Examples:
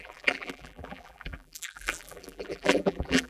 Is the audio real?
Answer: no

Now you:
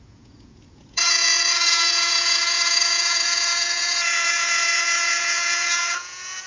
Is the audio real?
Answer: no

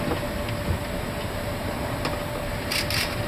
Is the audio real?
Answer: yes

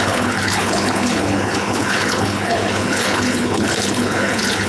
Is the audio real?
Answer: no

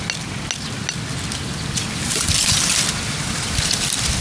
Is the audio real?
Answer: yes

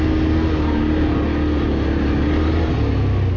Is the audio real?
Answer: yes